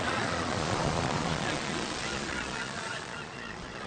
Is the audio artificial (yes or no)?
yes